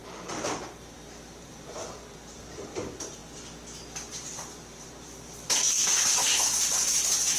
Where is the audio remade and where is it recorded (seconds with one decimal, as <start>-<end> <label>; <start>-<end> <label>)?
0.0-3.2 remade; 3.2-4.1 recorded; 4.1-7.4 remade